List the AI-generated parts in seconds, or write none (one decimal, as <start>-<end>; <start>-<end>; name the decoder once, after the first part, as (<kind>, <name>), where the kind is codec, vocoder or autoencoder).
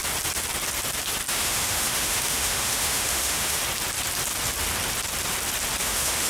1.3-3.6 (autoencoder, DAC-VAE); 5.8-6.3